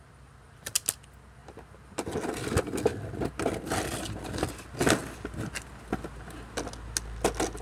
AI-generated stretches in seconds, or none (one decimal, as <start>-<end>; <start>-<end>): none

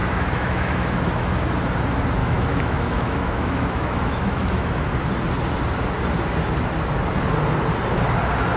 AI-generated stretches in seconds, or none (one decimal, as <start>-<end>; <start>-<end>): 0.0-1.3; 2.2-4.9